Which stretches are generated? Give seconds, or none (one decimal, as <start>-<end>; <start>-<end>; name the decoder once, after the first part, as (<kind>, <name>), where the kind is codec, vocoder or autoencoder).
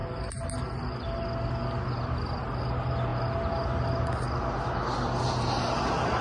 none